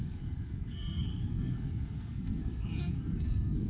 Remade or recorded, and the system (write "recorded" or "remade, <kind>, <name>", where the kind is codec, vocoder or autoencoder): remade, codec, SNAC